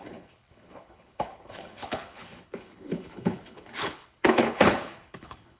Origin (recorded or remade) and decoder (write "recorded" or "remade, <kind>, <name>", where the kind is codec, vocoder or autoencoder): remade, codec, HILCodec